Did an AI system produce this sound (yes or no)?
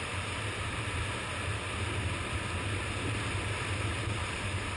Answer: no